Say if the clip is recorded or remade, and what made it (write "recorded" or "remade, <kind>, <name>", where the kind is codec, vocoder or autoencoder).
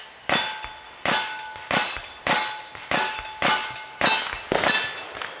recorded